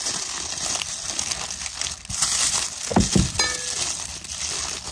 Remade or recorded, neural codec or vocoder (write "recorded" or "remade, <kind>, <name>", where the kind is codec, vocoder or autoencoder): recorded